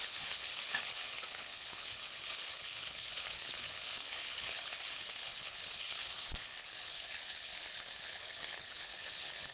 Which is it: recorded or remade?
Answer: remade